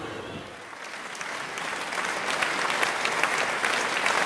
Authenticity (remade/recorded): recorded